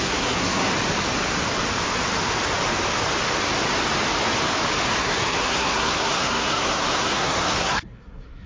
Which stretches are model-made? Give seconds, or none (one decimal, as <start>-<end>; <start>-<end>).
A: 0.0-0.7; 5.0-8.5